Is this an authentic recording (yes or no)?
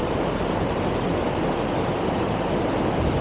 no